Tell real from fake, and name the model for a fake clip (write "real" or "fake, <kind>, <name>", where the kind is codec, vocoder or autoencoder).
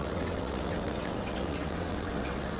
fake, vocoder, WaveNeXt